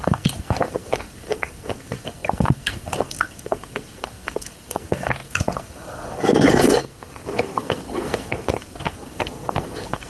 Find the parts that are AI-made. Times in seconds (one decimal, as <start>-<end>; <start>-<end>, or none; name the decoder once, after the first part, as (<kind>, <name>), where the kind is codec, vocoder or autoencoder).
0.0-10.1 (codec, SNAC)